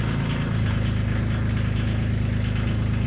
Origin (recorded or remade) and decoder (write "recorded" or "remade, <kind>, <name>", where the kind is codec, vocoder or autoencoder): recorded